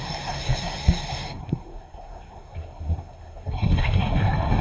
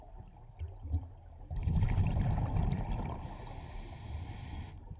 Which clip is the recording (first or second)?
second